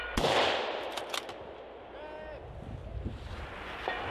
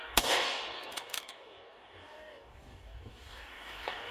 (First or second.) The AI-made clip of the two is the second